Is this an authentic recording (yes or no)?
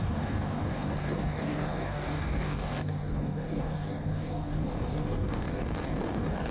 no